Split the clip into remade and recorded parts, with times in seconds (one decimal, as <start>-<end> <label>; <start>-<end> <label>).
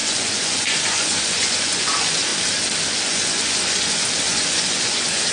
0.0-2.3 remade; 2.3-2.9 recorded; 2.9-5.3 remade